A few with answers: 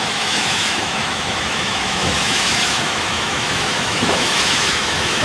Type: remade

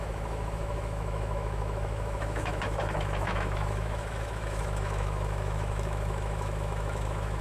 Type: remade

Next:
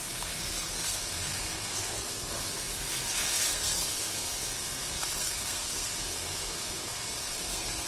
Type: remade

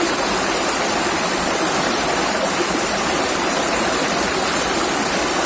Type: remade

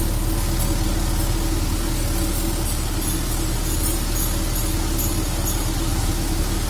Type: recorded